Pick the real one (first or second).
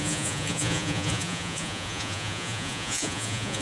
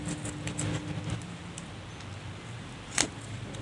second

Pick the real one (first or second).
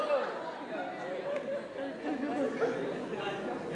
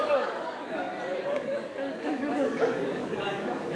first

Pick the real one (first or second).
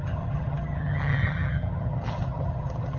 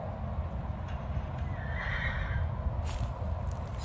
second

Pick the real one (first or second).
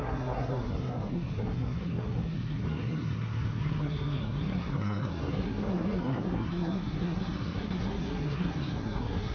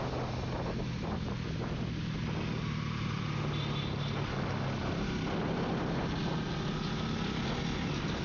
second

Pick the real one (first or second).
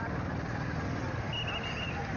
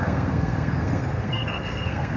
first